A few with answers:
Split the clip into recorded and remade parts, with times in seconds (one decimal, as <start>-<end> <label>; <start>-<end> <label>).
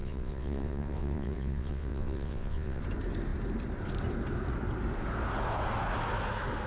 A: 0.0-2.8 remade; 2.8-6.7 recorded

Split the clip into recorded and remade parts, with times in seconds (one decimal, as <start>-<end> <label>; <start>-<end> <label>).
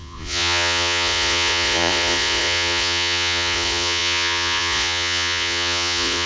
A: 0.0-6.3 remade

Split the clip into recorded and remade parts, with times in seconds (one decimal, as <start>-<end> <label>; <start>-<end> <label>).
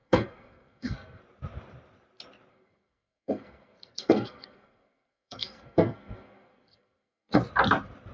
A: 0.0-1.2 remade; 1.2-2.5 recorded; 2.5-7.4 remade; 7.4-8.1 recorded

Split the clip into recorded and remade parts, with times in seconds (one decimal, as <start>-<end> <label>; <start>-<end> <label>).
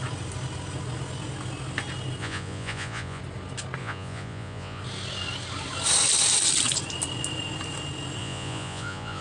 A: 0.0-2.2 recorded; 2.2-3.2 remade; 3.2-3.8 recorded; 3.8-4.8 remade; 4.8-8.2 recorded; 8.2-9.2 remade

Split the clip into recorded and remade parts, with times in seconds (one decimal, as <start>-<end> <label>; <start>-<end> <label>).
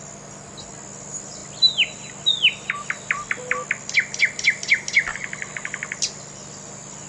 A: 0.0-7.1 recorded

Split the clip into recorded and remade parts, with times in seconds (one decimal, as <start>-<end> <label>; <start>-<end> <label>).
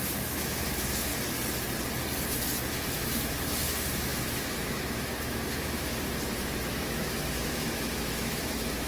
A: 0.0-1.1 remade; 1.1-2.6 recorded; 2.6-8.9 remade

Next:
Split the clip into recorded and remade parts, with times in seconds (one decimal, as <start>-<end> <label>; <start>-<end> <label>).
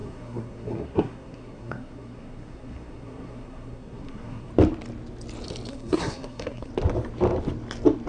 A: 0.0-4.5 remade; 4.5-5.7 recorded; 5.7-6.7 remade; 6.7-8.1 recorded